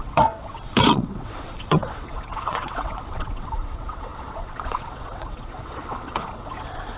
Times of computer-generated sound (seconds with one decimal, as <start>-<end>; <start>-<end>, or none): 0.0-7.0